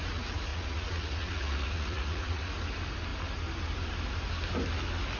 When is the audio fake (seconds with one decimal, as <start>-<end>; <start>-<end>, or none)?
0.5-2.5